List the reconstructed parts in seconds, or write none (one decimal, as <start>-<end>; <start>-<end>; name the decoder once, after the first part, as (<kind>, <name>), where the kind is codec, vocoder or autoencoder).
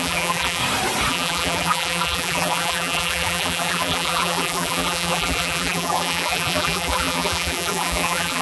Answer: 0.0-0.6 (vocoder, BigVGAN v2); 1.1-8.4